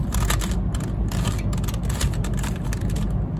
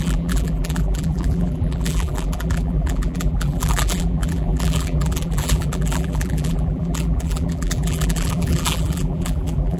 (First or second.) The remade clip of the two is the second